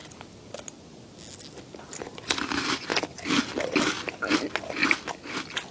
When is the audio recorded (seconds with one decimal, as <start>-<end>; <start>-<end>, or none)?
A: 0.0-5.7